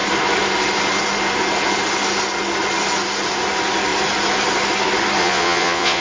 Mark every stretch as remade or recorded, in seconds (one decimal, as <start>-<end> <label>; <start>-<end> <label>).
0.0-5.2 recorded; 5.2-6.0 remade